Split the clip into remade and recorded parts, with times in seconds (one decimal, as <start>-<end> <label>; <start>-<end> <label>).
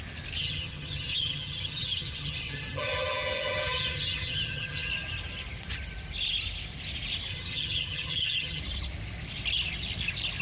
0.0-0.4 recorded; 0.4-4.9 remade; 4.9-7.3 recorded; 7.3-8.6 remade; 8.6-10.4 recorded